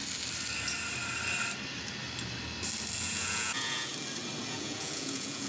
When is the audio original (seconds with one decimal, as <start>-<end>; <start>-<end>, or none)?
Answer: 0.0-3.0; 3.9-4.4